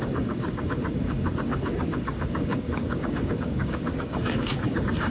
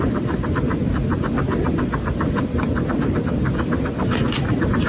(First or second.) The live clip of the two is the second